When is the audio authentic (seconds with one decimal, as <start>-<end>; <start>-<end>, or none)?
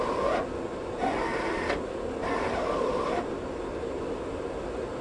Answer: 0.0-5.0